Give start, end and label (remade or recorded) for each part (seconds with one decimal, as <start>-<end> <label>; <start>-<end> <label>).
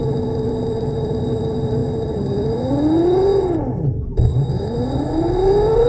0.0-5.9 recorded